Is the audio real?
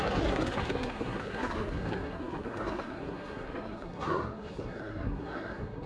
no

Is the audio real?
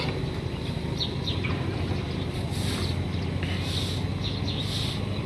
yes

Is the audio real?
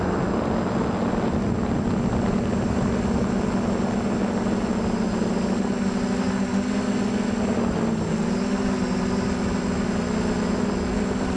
yes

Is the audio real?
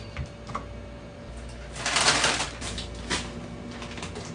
yes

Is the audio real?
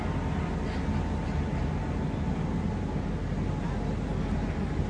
yes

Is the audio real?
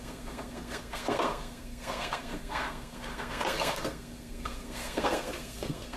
no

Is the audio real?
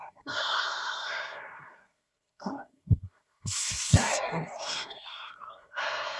no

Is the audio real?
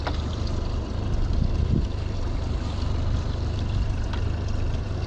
yes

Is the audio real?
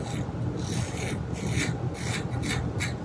yes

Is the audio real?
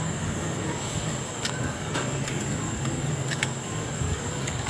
no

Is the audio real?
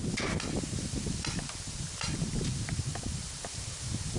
no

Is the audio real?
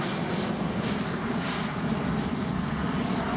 yes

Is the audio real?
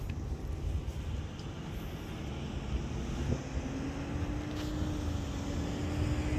yes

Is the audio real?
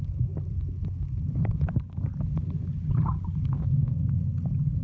yes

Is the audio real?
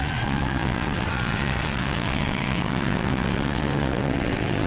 no